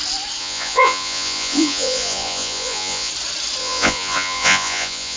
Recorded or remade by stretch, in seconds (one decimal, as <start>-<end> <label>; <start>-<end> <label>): 0.0-0.4 recorded; 0.4-3.1 remade; 3.1-3.6 recorded; 3.6-5.2 remade